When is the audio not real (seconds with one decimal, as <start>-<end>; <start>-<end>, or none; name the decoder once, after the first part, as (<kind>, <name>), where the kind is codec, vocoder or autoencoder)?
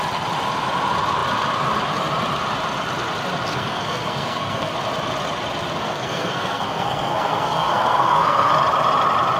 3.5-4.7 (codec, SNAC); 5.8-8.5